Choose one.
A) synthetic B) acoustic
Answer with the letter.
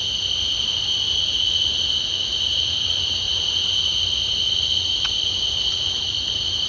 B